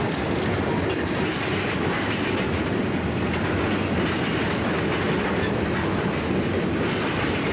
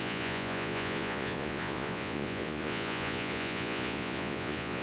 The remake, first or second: second